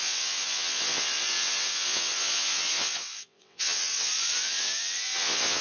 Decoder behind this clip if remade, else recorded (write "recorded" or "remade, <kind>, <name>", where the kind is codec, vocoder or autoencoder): remade, vocoder, WaveNeXt